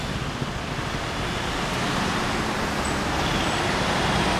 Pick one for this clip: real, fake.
real